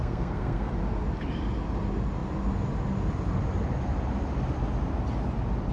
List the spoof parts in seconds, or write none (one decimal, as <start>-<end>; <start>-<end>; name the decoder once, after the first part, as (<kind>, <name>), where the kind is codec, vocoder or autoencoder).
0.0-0.7 (codec, SNAC)